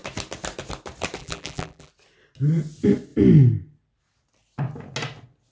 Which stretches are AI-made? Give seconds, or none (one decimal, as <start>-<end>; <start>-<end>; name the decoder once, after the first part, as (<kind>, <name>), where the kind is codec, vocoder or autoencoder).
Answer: 1.2-1.9 (vocoder, BigVGAN v2)